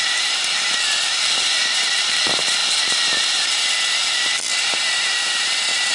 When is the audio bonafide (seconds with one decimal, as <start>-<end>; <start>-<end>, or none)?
0.0-5.9